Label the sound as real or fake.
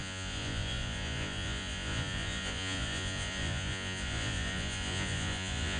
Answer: fake